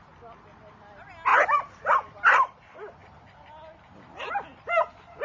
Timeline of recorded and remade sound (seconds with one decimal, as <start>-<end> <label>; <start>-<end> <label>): 0.0-5.2 recorded